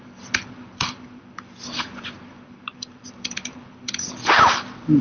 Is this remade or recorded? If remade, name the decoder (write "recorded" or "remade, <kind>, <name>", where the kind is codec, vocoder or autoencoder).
remade, vocoder, BigVGAN v2